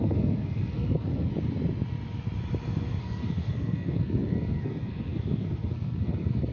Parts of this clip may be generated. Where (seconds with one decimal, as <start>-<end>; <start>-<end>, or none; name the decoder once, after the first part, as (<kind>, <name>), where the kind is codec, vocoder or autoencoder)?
0.0-1.3 (codec, SNAC); 3.0-6.5